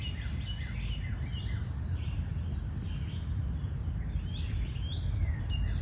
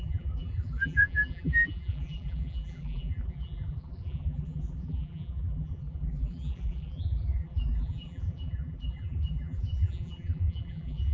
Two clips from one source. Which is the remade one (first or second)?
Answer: second